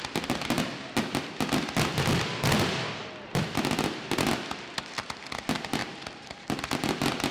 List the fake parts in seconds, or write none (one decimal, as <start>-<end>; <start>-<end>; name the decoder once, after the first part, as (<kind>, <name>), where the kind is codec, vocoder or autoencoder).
5.8-6.6 (vocoder, BigVGAN v2)